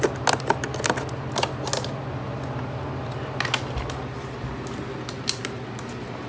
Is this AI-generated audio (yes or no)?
no